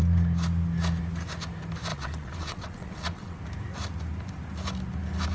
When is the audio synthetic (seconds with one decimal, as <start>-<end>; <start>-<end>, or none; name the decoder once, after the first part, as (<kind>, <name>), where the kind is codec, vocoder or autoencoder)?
1.9-3.4 (vocoder, WaveNeXt)